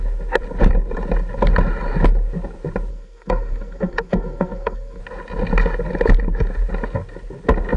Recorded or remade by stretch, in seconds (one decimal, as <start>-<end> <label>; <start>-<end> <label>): 0.0-2.9 recorded; 2.9-5.0 remade; 5.0-7.8 recorded